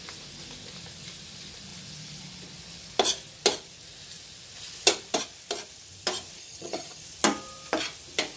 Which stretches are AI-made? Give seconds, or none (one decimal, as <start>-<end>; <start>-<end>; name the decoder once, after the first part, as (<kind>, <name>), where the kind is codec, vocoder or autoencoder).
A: 6.4-7.0 (vocoder, HiFi-GAN)